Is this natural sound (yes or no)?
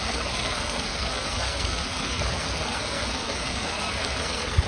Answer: no